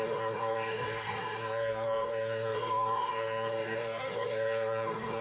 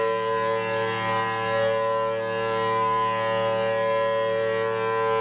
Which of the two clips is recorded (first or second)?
second